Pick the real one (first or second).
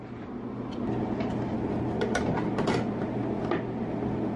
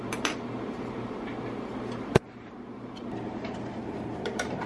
first